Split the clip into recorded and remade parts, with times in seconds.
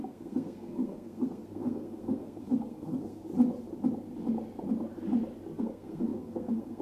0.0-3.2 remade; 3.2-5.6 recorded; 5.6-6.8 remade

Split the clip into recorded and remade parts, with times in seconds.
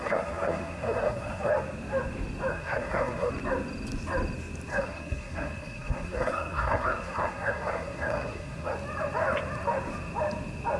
0.0-1.5 remade; 1.5-2.5 recorded; 2.5-3.3 remade; 3.3-4.7 recorded; 4.7-8.7 remade; 8.7-10.8 recorded